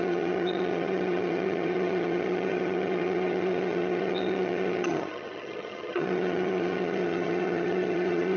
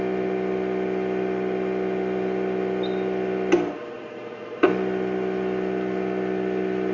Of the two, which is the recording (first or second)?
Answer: second